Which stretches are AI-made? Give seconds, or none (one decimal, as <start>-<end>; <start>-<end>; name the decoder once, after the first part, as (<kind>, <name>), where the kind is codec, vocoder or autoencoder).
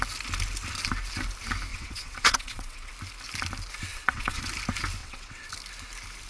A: 1.7-2.9 (vocoder, WaveNeXt); 3.9-4.4; 5.0-5.5